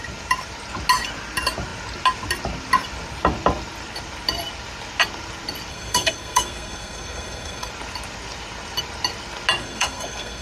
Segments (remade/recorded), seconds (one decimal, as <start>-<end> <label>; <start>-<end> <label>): 0.0-5.7 recorded; 5.7-7.7 remade; 7.7-9.6 recorded; 9.6-10.4 remade